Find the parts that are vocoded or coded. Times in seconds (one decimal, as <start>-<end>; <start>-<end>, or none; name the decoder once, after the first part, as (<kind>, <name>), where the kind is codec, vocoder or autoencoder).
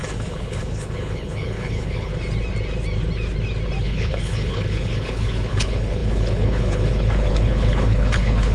0.0-2.1 (codec, HILCodec); 3.8-8.5